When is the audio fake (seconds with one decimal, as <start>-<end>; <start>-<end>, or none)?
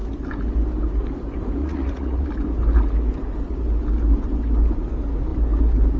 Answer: 1.6-2.3